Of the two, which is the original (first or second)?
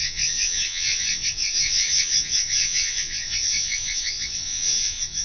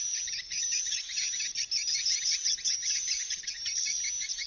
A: second